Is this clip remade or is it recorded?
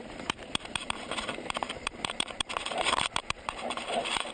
remade